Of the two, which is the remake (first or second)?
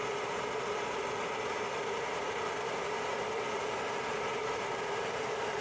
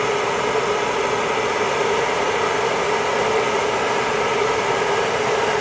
first